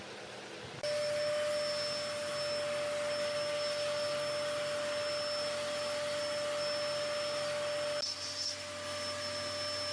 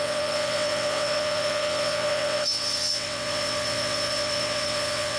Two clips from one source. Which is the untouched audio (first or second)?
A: first